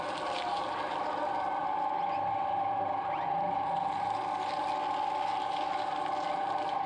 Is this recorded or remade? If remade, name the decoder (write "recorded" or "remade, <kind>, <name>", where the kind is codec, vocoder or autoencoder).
recorded